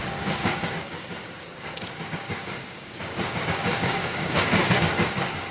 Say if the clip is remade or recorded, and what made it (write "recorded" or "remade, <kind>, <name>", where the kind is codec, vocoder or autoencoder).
remade, codec, DAC